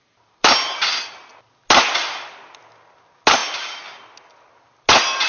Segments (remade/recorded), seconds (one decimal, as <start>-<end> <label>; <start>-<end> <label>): 0.0-5.3 recorded